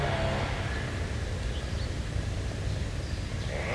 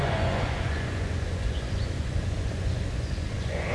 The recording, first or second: first